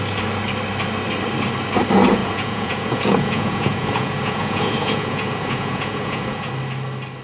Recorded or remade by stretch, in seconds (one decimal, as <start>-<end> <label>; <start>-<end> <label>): 0.0-2.2 recorded; 2.2-6.5 remade; 6.5-7.2 recorded